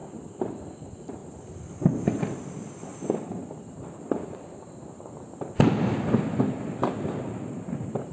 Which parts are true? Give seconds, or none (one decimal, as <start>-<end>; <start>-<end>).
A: 0.0-8.1